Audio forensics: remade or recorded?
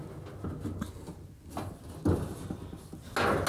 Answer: recorded